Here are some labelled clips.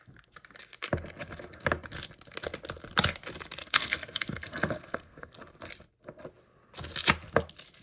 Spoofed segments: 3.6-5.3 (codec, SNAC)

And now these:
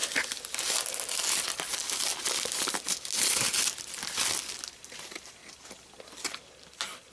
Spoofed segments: none

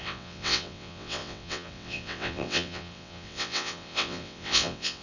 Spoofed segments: 0.0-5.0 (vocoder, WaveNeXt)

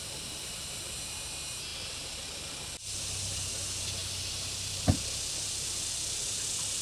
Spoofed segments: none

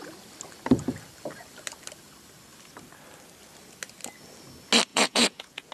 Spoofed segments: 4.9-5.7 (vocoder, Vocos)